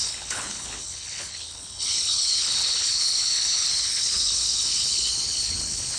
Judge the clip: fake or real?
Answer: fake